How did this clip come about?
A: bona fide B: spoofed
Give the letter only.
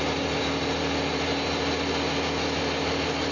A